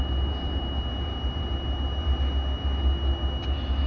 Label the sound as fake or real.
real